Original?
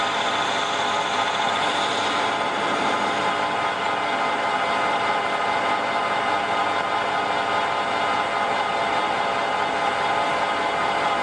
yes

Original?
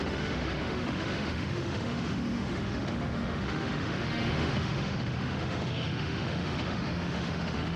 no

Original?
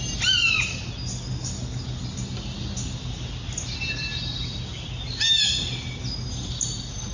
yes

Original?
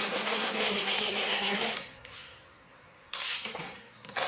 no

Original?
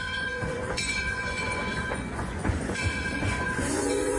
no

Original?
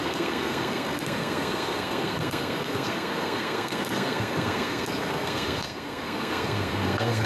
no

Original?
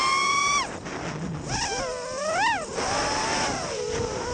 yes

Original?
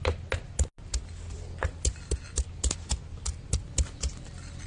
yes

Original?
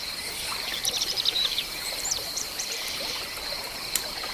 no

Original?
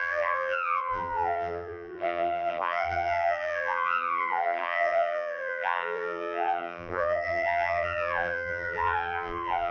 no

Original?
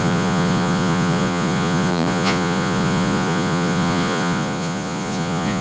no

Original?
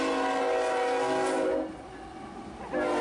yes